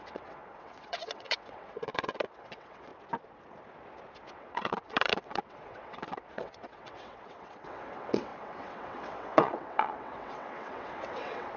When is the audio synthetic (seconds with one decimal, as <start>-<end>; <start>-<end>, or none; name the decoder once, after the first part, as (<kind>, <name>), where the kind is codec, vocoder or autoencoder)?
0.0-2.9 (vocoder, WaveNeXt); 4.3-11.6